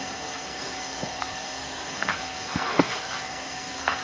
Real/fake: fake